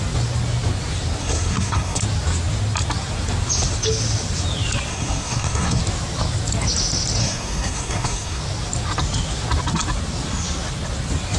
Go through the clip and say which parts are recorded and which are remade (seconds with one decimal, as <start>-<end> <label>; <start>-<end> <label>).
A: 0.0-1.2 recorded; 1.2-2.0 remade; 2.0-4.9 recorded; 4.9-5.8 remade; 5.8-7.2 recorded; 7.2-8.4 remade; 8.4-11.4 recorded

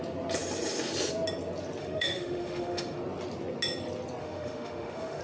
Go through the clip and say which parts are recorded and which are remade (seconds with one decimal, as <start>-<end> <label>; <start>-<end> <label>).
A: 0.0-1.8 recorded; 1.8-3.0 remade; 3.0-4.2 recorded; 4.2-5.2 remade

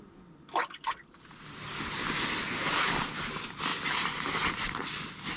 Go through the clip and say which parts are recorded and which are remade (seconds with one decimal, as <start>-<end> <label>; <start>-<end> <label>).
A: 0.0-5.4 recorded

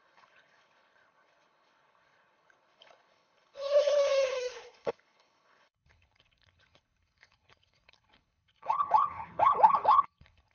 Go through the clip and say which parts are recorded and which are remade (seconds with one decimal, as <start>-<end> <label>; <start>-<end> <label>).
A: 0.0-10.5 remade